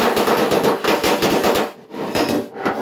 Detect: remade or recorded recorded